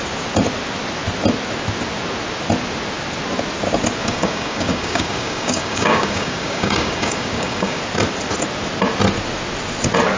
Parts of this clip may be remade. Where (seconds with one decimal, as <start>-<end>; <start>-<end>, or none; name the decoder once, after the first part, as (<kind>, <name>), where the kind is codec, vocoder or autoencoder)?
4.0-7.8 (codec, DAC)